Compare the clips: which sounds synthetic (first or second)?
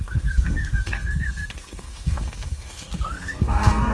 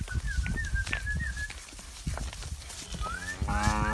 first